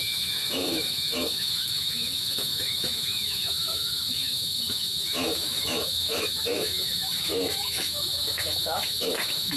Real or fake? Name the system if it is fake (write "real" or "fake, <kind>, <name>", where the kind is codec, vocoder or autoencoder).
fake, autoencoder, DAC-VAE